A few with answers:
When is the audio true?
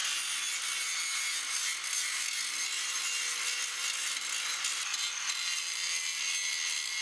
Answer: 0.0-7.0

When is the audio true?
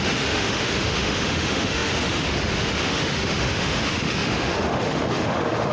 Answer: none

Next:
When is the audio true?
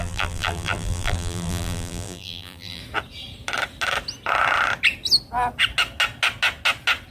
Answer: 2.8-7.1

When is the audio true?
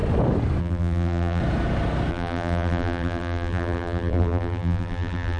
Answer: 0.0-0.6; 1.4-2.1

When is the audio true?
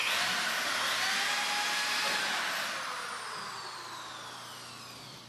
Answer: 0.0-5.3